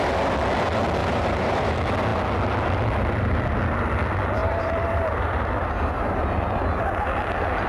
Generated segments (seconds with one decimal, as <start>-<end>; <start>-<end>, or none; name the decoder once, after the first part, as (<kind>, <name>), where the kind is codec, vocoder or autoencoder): 1.0-1.7 (vocoder, BigVGAN v2); 4.4-6.6